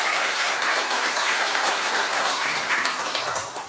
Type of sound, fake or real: fake